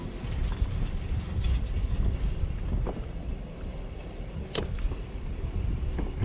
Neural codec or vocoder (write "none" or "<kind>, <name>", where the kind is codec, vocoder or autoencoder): none